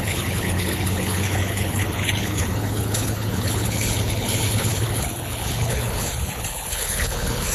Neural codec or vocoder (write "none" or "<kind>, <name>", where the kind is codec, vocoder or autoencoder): codec, HILCodec